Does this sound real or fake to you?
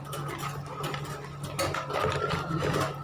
real